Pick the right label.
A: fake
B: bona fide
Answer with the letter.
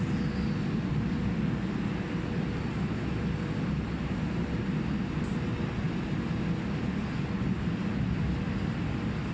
B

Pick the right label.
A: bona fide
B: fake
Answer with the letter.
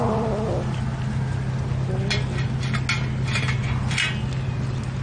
A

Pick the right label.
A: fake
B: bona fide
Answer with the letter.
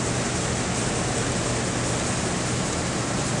B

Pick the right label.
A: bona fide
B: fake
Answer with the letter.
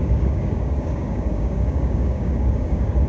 B